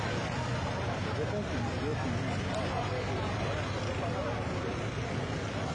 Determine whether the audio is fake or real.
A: real